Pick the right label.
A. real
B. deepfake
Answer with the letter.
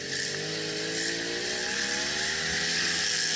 A